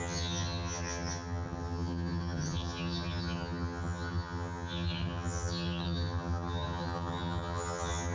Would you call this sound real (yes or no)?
no